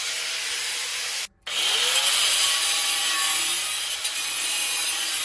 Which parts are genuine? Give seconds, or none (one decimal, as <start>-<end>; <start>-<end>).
0.9-2.1; 2.8-3.9